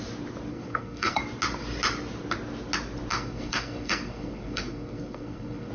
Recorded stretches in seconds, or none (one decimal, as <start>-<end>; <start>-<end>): 0.0-0.5; 1.2-3.1